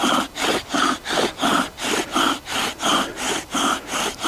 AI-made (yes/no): no